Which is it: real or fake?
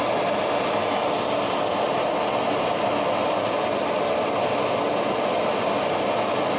real